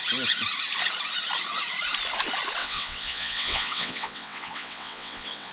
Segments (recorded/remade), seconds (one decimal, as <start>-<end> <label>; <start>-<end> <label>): 0.0-2.6 recorded; 2.6-5.5 remade